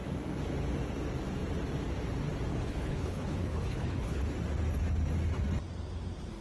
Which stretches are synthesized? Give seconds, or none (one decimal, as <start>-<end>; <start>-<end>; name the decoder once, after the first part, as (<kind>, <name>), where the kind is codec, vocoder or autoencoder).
2.5-4.2 (codec, HILCodec)